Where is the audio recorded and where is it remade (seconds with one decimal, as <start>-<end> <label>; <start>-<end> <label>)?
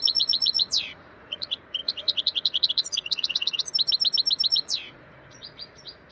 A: 0.0-3.7 remade; 3.7-4.5 recorded; 4.5-6.1 remade